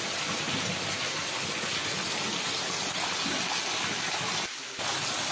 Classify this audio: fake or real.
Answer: real